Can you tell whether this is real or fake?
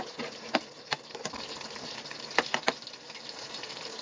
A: real